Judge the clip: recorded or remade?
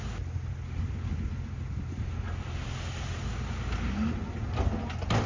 recorded